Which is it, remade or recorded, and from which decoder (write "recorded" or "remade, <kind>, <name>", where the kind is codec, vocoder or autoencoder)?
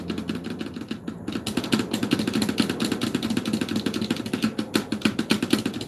recorded